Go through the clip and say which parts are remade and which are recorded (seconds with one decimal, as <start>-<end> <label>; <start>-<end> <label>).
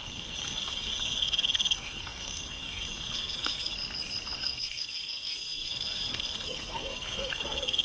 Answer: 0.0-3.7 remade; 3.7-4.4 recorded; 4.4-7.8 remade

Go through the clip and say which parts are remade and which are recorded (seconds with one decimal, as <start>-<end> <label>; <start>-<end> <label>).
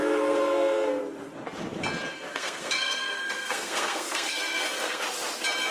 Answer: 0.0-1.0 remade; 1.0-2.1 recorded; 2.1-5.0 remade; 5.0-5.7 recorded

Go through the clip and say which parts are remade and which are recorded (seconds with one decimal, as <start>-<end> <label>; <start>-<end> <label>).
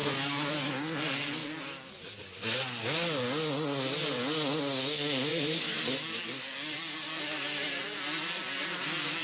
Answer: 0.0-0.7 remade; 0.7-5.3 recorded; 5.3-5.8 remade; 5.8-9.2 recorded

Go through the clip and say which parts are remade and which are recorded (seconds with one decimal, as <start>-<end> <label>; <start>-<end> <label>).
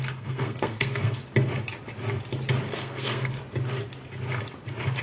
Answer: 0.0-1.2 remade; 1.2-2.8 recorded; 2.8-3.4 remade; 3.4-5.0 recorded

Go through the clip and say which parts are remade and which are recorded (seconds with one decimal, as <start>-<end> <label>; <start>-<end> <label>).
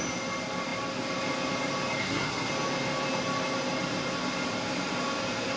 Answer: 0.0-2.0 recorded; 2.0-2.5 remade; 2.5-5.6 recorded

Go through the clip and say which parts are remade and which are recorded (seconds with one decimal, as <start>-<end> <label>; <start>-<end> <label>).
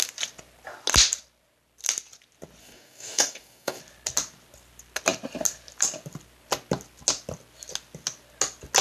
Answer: 0.0-2.6 recorded; 2.6-3.8 remade; 3.8-8.8 recorded